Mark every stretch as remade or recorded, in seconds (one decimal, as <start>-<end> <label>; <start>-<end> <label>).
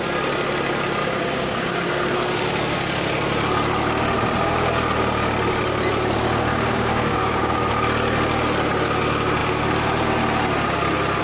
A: 0.0-1.0 recorded; 1.0-1.9 remade; 1.9-6.5 recorded; 6.5-7.7 remade; 7.7-11.2 recorded